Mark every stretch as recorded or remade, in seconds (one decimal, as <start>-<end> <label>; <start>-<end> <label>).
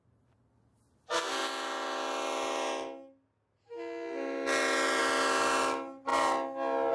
0.0-6.9 recorded